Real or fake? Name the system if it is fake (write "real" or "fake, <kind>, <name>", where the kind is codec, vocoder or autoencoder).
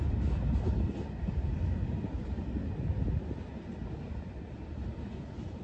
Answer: real